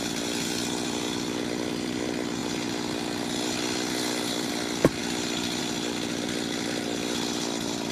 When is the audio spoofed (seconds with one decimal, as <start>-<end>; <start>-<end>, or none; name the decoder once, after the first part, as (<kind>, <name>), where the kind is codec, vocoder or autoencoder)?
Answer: none